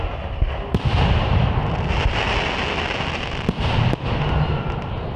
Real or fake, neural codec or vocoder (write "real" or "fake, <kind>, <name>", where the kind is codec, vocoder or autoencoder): real